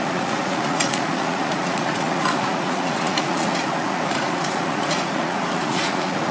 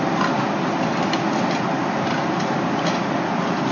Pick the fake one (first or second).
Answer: first